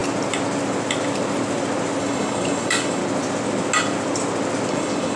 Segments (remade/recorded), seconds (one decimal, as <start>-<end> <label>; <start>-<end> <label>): 0.0-2.0 recorded; 2.0-3.0 remade; 3.0-4.7 recorded; 4.7-5.2 remade